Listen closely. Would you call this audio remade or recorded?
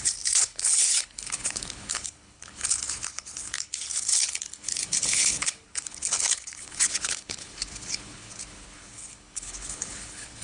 remade